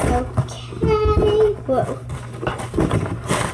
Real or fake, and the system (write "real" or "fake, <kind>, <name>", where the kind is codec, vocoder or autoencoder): real